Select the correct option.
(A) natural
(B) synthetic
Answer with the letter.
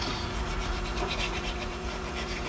B